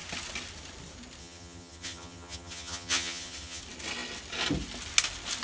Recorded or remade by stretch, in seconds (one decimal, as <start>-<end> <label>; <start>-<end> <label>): 0.0-1.2 recorded; 1.2-3.6 remade; 3.6-5.4 recorded